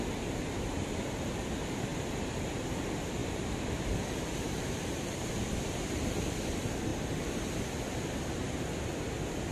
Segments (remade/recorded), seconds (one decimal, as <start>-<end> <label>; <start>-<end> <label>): 0.0-3.2 recorded; 3.2-5.3 remade; 5.3-6.9 recorded; 6.9-7.5 remade; 7.5-9.5 recorded